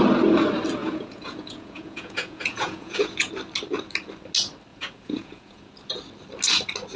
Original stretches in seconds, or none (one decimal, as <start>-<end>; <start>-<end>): 0.0-0.8; 3.3-4.7; 5.7-7.0